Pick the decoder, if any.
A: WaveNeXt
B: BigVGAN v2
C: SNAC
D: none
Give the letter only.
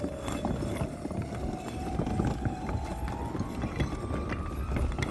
D